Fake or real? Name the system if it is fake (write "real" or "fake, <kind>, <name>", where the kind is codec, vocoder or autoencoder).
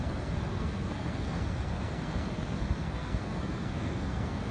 fake, codec, SNAC